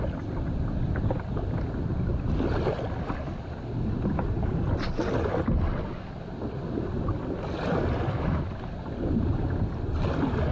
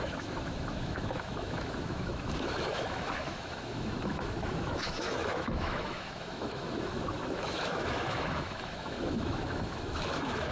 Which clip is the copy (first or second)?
second